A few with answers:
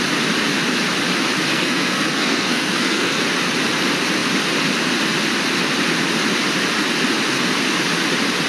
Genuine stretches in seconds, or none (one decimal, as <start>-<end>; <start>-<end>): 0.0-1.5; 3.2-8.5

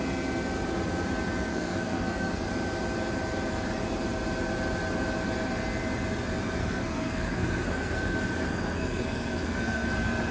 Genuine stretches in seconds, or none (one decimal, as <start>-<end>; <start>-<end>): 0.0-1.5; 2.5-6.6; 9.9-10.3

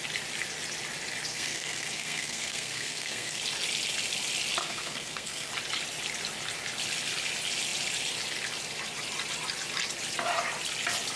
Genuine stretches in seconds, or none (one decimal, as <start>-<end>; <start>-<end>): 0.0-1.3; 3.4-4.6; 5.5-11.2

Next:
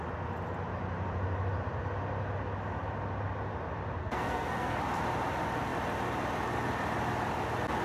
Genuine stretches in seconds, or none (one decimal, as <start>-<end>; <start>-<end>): 0.0-4.0; 4.8-7.8